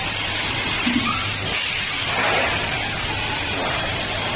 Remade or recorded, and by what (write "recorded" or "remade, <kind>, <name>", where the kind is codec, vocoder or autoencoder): remade, vocoder, BigVGAN v2